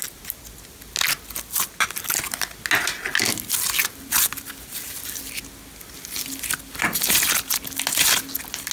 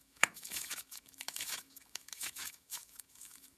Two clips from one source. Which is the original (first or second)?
first